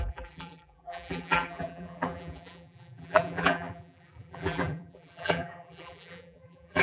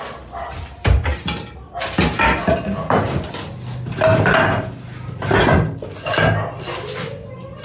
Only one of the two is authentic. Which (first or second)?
second